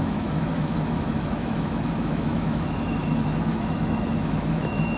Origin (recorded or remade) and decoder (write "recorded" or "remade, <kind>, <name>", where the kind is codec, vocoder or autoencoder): remade, autoencoder, DAC-VAE